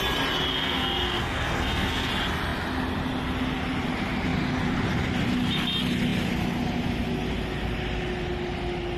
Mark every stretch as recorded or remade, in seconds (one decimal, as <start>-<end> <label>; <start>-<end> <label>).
0.0-0.5 recorded; 0.5-2.1 remade; 2.1-9.0 recorded